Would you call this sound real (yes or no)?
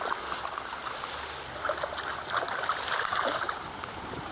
yes